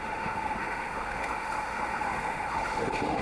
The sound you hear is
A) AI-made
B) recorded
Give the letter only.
A